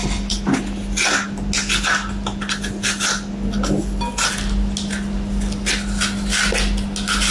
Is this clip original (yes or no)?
yes